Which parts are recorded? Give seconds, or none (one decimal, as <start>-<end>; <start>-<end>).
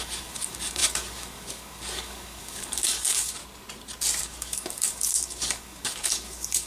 3.4-4.2